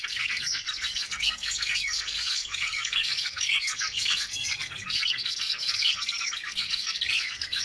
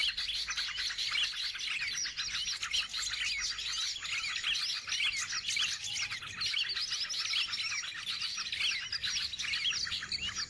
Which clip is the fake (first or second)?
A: first